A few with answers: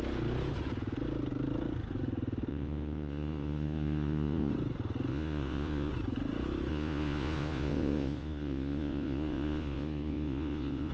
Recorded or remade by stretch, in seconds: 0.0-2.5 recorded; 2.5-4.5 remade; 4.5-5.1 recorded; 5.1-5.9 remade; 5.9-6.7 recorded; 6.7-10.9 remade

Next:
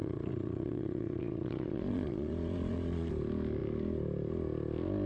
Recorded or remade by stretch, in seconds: 0.0-3.1 remade; 3.1-5.1 recorded

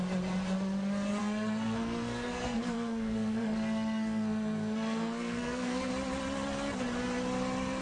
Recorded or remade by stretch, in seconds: 0.0-1.2 recorded; 1.2-5.9 remade; 5.9-7.8 recorded

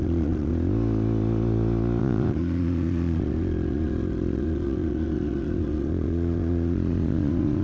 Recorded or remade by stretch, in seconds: 0.0-0.5 remade; 0.5-2.0 recorded; 2.0-7.6 remade

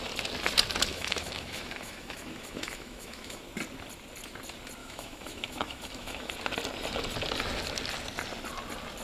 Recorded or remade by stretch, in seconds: 0.0-0.9 recorded; 0.9-3.4 remade; 3.4-4.8 recorded; 4.8-6.3 remade; 6.3-9.0 recorded

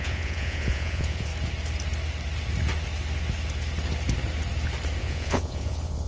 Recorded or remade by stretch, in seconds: 0.0-1.3 remade; 1.3-5.0 recorded; 5.0-6.1 remade

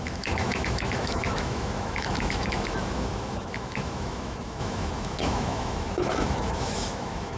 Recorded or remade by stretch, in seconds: 0.0-7.4 remade